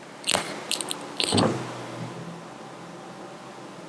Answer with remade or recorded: recorded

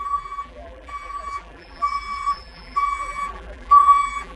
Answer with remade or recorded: remade